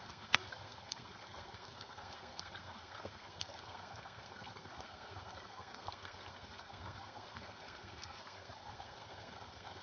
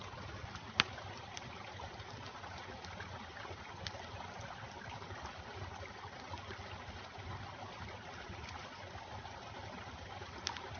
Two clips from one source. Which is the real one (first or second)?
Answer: second